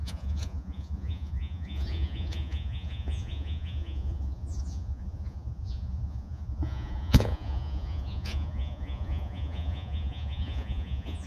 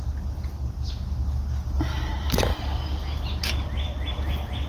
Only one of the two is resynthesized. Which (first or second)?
first